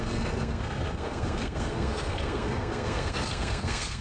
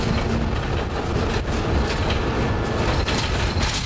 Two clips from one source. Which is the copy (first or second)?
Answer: first